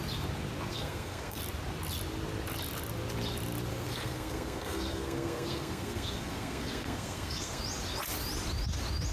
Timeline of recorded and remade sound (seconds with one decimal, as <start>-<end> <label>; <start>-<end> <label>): 0.0-0.7 recorded; 0.7-1.4 remade; 1.4-3.7 recorded; 3.7-7.6 remade; 7.6-9.1 recorded

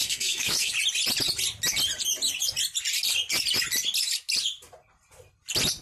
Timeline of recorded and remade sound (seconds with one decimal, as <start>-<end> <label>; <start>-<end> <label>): 0.0-0.7 remade; 0.7-5.8 recorded

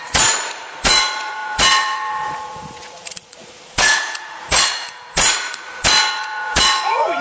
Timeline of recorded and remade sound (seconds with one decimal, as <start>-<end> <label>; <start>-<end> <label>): 0.0-7.2 remade

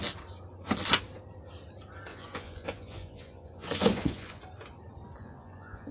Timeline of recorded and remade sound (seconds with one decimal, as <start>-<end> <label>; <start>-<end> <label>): 0.0-2.1 recorded; 2.1-4.4 remade; 4.4-5.2 recorded; 5.2-5.9 remade